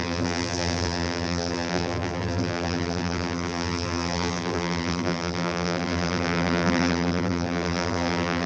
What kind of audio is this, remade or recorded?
remade